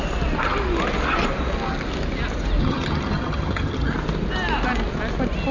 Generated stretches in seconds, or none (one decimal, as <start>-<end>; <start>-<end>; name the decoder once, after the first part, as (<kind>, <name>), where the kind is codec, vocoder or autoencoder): 2.6-3.9 (vocoder, HiFi-GAN)

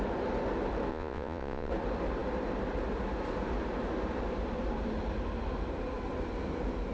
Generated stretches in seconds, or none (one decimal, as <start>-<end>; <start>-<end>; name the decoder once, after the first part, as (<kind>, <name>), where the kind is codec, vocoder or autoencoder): 0.9-1.7 (vocoder, Vocos)

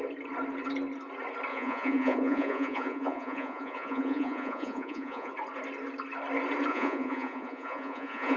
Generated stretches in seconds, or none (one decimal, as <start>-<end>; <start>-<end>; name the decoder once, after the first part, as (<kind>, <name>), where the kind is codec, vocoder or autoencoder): 1.5-5.3 (vocoder, Vocos); 6.7-8.4

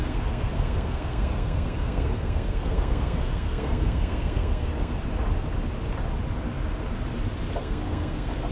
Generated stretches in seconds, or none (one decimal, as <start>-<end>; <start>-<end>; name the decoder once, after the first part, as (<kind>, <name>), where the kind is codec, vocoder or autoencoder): 0.0-4.9 (codec, SNAC); 7.6-8.5

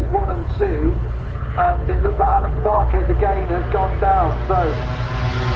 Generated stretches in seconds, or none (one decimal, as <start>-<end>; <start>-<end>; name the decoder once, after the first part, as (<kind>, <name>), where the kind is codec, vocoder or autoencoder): 0.0-3.2 (codec, HILCodec)

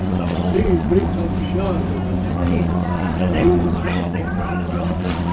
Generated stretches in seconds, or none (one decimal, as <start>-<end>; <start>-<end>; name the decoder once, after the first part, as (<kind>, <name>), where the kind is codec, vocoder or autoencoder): 0.0-1.1 (vocoder, Vocos); 2.3-5.3